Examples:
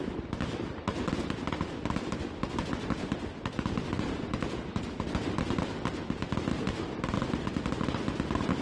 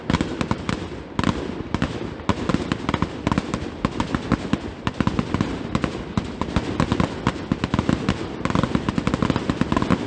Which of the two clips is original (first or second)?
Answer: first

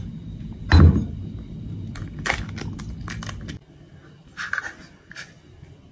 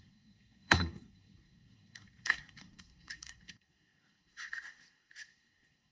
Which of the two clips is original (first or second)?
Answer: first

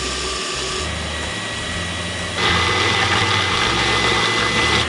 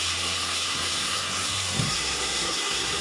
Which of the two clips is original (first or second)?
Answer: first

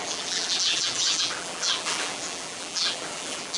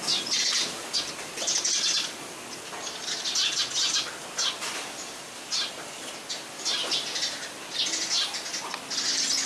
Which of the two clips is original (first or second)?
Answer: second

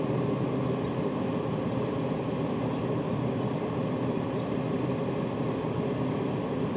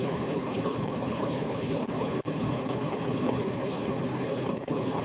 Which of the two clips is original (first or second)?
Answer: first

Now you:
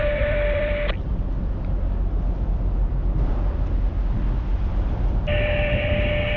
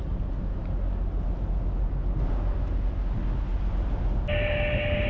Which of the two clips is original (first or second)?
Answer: second